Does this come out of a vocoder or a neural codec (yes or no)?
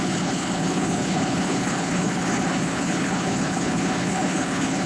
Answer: yes